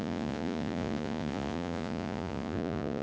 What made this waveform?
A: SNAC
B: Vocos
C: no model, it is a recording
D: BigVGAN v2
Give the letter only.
B